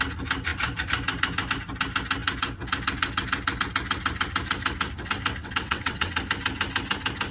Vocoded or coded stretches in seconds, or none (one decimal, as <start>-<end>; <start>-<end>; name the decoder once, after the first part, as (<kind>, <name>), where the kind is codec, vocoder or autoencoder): 5.4-6.2 (vocoder, WaveNeXt)

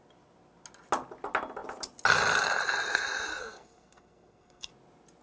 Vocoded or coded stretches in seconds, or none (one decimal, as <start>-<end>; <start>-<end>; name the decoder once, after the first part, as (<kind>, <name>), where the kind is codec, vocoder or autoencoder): 3.4-4.7 (codec, SNAC)